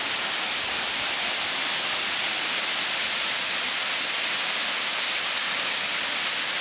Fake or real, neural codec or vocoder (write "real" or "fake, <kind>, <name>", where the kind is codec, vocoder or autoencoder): real